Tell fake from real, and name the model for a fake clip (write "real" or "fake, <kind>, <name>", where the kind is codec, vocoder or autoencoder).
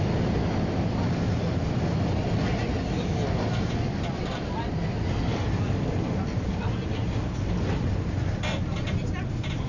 real